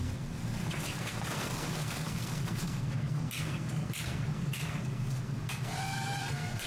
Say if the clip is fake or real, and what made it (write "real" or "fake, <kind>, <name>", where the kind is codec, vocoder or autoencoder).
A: fake, codec, SNAC